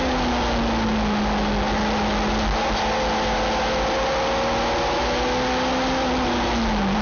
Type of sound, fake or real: real